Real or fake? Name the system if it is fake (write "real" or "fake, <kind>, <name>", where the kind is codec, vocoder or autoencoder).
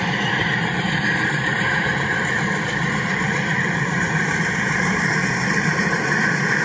fake, vocoder, BigVGAN v2